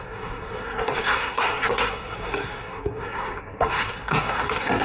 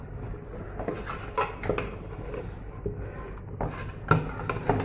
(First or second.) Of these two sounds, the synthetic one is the first